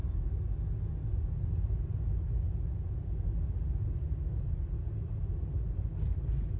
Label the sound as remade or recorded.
recorded